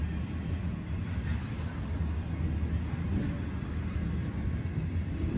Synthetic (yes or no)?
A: no